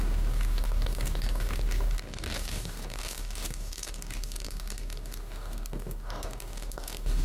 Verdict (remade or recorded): remade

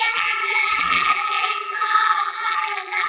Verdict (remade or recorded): remade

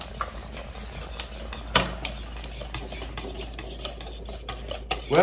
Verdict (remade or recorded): recorded